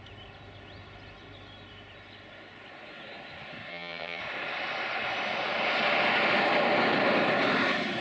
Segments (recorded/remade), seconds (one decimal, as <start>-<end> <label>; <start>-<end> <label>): 0.0-3.7 recorded; 3.7-4.2 remade; 4.2-8.0 recorded